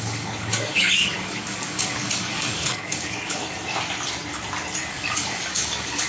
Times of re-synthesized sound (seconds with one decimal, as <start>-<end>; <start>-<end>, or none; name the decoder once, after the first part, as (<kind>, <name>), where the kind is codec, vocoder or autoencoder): 0.0-3.4 (codec, DAC); 4.9-6.1